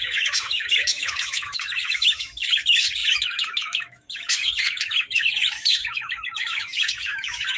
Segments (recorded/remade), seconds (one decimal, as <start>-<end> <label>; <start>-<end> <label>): 0.0-7.6 remade